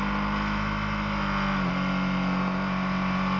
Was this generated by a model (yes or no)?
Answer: no